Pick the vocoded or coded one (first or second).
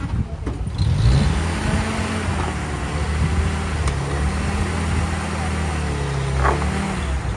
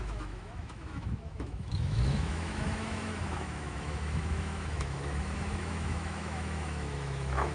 second